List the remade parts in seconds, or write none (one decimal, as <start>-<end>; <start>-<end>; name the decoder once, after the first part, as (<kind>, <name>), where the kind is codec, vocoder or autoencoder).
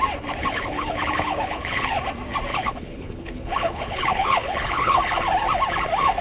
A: 0.4-2.0 (codec, HILCodec); 2.5-5.0